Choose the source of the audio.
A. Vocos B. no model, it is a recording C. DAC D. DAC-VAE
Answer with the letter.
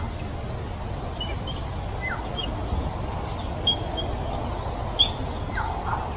B